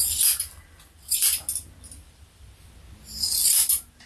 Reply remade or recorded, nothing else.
recorded